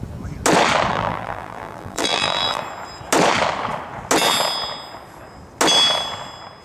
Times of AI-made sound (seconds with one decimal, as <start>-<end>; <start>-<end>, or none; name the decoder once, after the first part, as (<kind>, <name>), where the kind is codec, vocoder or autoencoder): 0.9-2.6 (vocoder, BigVGAN v2)